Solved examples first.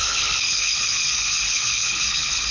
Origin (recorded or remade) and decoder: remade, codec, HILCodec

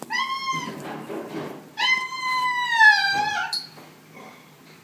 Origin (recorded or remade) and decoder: recorded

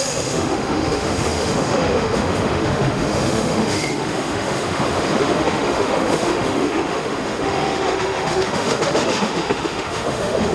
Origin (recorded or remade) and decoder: remade, autoencoder, DAC-VAE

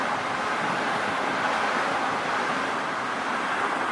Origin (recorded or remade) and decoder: recorded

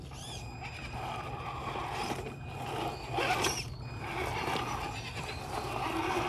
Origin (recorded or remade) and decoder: recorded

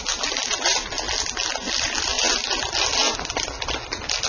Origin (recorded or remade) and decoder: recorded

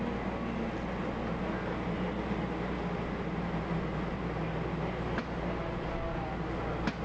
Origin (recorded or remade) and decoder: recorded